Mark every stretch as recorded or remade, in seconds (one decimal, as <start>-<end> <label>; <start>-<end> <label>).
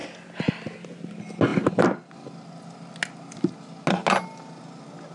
0.0-5.1 recorded